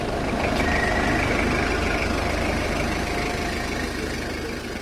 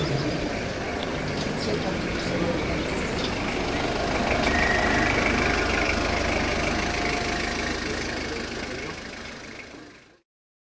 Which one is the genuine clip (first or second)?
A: second